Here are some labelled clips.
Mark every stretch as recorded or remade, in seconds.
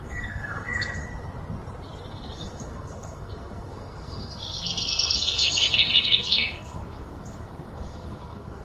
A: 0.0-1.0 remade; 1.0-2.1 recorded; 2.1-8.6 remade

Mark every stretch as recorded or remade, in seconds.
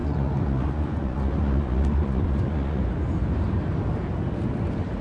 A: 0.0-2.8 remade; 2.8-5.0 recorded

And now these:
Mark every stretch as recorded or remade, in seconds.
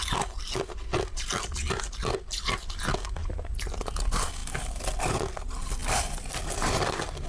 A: 0.0-7.3 recorded